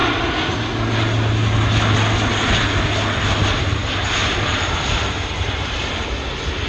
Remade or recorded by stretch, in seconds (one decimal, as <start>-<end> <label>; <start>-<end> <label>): 0.0-3.8 recorded; 3.8-5.9 remade; 5.9-6.7 recorded